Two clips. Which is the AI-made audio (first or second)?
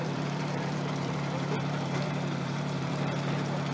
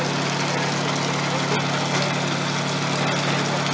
first